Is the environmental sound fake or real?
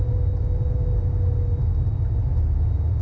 real